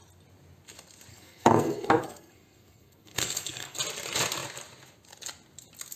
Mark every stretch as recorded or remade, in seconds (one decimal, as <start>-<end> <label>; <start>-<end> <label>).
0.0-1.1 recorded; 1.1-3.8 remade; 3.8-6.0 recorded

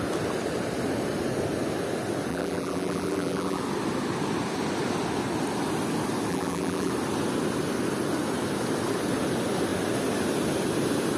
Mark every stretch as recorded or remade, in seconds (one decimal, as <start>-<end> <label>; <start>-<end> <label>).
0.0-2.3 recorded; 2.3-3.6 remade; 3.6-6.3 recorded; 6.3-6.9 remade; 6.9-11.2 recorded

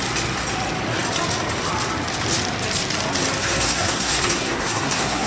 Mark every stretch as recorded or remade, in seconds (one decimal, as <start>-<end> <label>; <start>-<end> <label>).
0.0-3.4 recorded; 3.4-5.3 remade